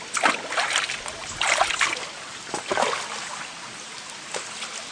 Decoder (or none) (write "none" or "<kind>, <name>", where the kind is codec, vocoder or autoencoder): none